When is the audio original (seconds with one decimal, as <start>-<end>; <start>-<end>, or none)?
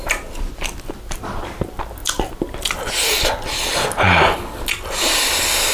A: 0.0-5.7